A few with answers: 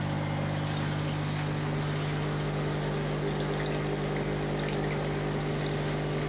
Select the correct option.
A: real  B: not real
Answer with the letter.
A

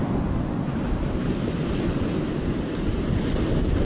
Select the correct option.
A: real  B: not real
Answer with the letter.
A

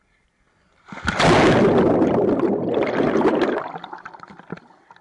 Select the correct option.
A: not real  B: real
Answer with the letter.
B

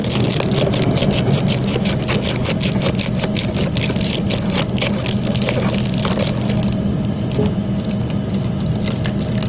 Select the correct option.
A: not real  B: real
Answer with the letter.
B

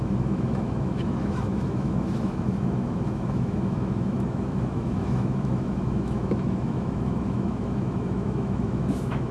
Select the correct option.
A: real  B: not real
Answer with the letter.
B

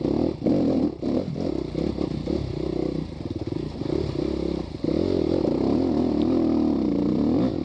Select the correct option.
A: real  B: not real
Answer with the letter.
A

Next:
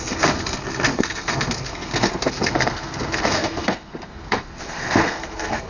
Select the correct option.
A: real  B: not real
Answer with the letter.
B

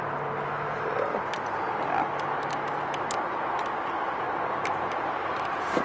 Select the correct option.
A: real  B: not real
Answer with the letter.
A